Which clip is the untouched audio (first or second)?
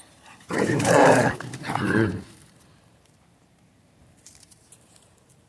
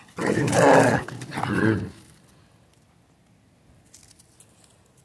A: second